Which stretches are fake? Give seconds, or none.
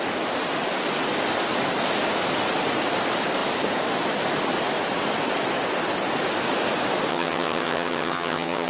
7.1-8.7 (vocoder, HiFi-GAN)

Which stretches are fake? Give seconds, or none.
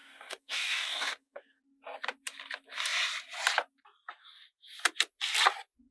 0.0-1.6 (codec, DAC)